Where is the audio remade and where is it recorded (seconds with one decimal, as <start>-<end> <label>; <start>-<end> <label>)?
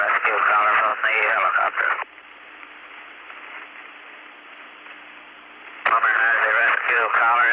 0.0-0.9 recorded; 0.9-4.3 remade; 4.3-7.5 recorded